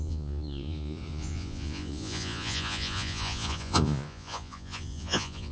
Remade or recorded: remade